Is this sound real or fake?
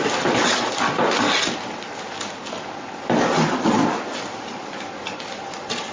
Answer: real